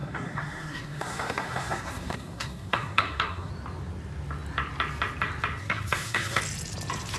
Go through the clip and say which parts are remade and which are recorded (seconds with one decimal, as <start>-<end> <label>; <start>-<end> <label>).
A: 0.0-3.5 remade; 3.5-5.6 recorded; 5.6-6.4 remade; 6.4-7.2 recorded